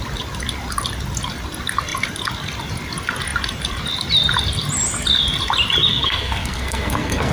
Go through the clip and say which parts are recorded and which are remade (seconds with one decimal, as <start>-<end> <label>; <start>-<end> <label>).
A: 0.0-5.9 recorded; 5.9-7.3 remade